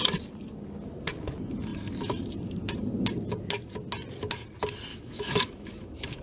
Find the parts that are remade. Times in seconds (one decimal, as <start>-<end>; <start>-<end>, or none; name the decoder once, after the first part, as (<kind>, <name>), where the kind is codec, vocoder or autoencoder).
4.9-6.2 (autoencoder, DAC-VAE)